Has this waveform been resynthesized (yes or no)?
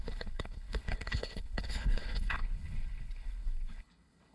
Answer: yes